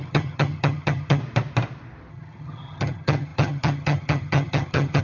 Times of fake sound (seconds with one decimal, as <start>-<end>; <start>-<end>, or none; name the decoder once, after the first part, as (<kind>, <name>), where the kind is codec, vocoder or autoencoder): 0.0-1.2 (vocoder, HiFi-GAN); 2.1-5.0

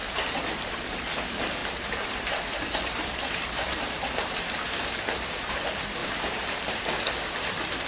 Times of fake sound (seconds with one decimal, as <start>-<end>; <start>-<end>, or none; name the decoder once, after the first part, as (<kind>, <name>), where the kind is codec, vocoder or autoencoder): 1.6-5.6 (vocoder, BigVGAN v2); 6.0-6.8

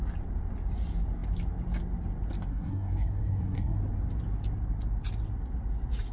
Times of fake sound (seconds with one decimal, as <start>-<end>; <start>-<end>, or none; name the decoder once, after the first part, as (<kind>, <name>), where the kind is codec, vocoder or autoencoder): 2.5-3.8 (codec, SNAC)

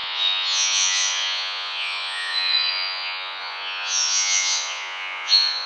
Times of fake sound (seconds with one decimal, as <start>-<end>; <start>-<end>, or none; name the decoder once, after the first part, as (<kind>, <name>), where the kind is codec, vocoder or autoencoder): 0.0-5.7 (vocoder, Vocos)

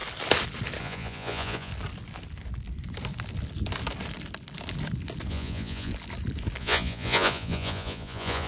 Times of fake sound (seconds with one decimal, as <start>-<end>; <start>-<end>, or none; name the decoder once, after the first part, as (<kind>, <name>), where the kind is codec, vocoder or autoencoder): 0.8-1.7 (vocoder, Vocos); 5.3-5.9; 6.6-8.5

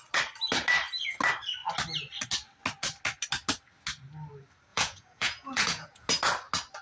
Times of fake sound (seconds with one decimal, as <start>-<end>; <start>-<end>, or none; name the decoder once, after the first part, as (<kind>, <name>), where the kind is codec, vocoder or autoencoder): 4.7-6.1 (vocoder, Vocos)

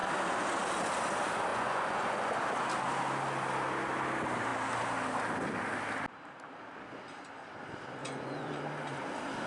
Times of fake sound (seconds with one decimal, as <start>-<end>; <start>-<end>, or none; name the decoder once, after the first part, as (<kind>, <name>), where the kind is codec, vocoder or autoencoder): 1.5-2.4 (vocoder, Vocos); 8.0-8.6